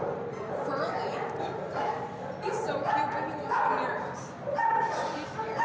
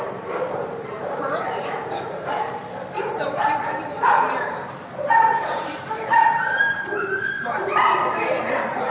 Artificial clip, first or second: second